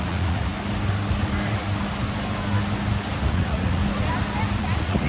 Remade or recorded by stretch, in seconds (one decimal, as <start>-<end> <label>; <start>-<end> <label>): 0.0-0.5 remade; 0.5-3.2 recorded; 3.2-3.8 remade; 3.8-4.6 recorded; 4.6-5.1 remade